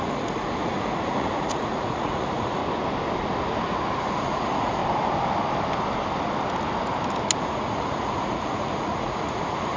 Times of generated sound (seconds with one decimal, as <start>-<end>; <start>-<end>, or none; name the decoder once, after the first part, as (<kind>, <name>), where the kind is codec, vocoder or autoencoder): 0.0-2.6 (vocoder, Vocos); 4.0-4.8; 7.4-9.8